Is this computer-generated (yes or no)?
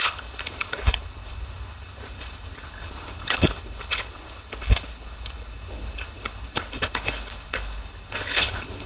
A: yes